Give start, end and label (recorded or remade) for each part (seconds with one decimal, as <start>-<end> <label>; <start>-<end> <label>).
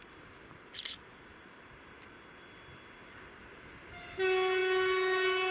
0.0-5.5 recorded